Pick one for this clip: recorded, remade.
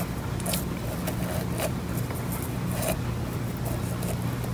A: recorded